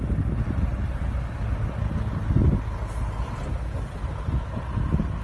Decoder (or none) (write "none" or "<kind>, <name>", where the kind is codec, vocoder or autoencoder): none